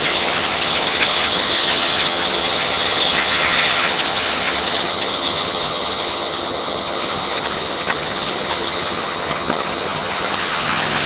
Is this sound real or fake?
fake